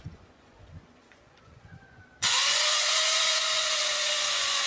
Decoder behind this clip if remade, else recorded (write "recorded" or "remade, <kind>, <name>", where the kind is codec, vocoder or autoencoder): remade, vocoder, Vocos